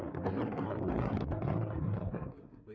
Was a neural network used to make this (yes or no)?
yes